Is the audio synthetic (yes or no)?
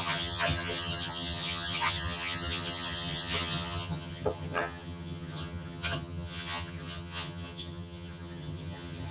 yes